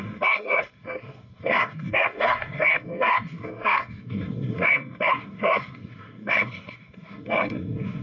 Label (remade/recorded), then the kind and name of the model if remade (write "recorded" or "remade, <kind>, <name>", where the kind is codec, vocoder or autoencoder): remade, codec, SNAC